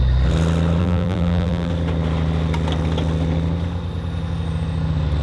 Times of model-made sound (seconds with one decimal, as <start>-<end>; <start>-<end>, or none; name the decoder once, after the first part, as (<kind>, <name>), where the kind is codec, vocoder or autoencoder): 0.8-1.7 (vocoder, BigVGAN v2)